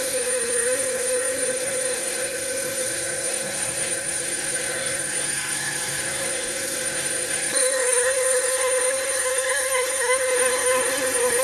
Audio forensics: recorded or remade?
remade